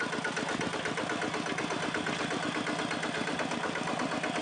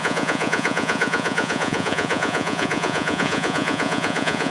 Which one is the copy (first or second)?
second